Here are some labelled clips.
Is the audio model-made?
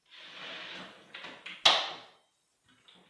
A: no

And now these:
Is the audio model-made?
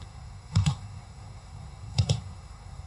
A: yes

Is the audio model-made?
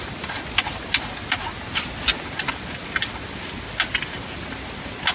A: no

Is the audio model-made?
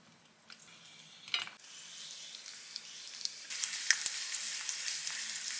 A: no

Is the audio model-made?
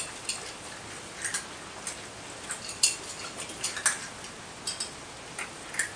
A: no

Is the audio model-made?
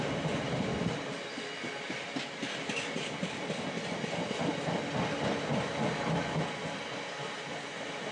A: no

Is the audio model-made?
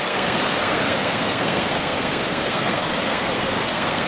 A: yes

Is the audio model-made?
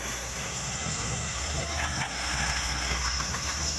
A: yes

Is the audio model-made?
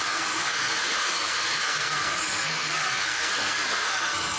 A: yes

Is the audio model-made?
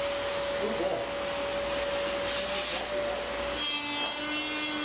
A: no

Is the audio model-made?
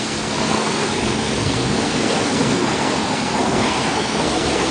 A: yes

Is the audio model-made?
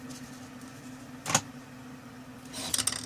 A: no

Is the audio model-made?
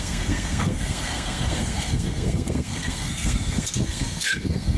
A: yes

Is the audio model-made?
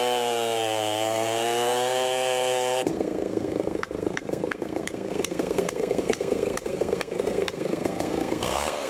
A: yes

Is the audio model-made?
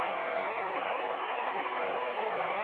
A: yes